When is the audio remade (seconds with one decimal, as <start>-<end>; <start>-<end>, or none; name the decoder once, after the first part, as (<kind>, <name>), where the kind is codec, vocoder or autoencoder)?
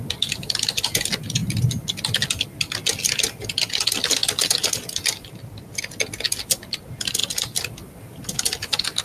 none